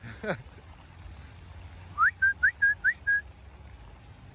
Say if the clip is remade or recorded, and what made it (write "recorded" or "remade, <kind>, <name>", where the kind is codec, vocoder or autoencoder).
recorded